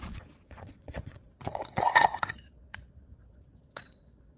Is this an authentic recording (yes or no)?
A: no